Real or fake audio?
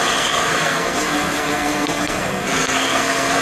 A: fake